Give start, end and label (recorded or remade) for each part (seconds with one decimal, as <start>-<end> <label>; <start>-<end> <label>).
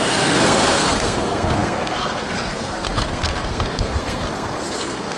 0.0-5.2 remade